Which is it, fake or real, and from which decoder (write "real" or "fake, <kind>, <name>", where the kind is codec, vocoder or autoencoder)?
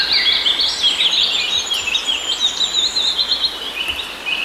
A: real